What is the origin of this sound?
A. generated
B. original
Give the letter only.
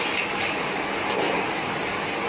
B